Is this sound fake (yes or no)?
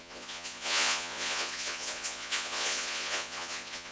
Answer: yes